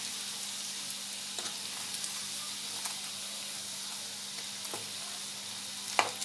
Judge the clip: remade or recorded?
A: recorded